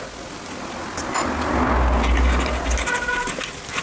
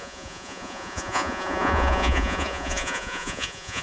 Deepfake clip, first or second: second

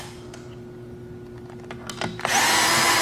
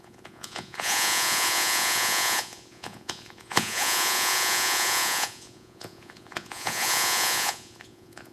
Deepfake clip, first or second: second